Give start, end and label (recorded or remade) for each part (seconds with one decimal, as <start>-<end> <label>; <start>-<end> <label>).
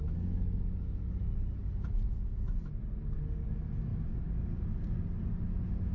0.0-5.9 recorded